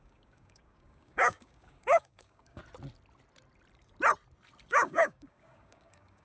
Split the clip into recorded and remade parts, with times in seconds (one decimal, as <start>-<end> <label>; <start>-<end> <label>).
0.0-2.6 remade; 2.6-4.7 recorded; 4.7-6.2 remade